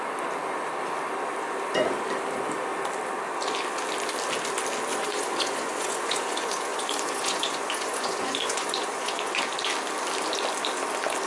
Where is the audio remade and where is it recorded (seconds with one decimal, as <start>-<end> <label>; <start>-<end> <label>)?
0.0-4.9 recorded; 4.9-9.4 remade; 9.4-11.3 recorded

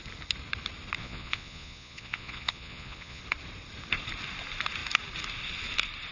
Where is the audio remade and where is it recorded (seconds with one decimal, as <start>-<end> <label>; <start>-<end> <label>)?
0.0-1.0 recorded; 1.0-3.2 remade; 3.2-6.1 recorded

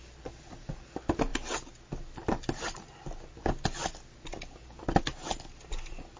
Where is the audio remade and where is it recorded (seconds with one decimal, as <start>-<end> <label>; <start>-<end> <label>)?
0.0-6.2 recorded

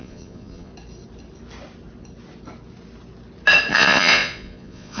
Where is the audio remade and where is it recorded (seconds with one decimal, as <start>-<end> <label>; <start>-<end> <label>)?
0.0-0.7 remade; 0.7-3.7 recorded; 3.7-5.0 remade

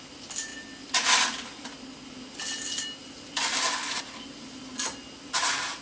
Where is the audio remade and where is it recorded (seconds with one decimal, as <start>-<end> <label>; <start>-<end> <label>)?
0.0-5.8 recorded